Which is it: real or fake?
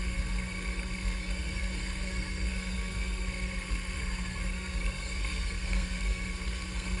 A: fake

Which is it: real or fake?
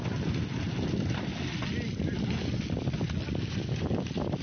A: real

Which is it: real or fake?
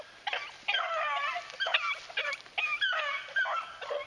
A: real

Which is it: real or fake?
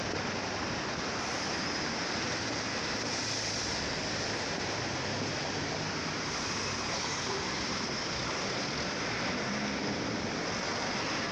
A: real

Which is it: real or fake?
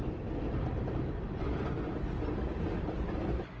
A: real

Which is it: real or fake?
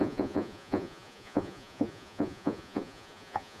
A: fake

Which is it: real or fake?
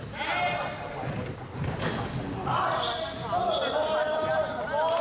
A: real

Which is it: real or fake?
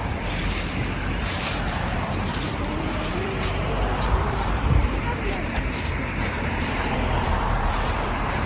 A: fake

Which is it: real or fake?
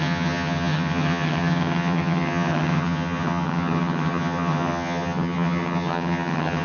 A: fake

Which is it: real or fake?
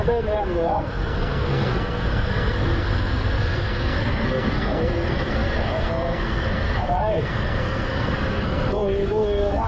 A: fake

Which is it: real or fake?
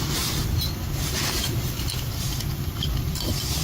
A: real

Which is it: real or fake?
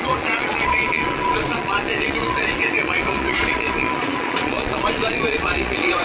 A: fake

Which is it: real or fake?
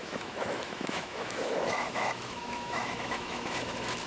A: fake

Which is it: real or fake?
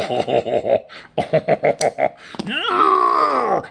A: real